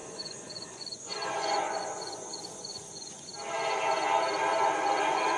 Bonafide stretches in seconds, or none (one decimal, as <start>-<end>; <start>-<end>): 3.3-5.0